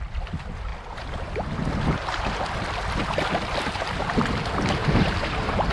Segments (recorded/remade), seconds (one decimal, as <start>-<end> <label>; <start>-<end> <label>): 0.0-4.8 recorded; 4.8-5.7 remade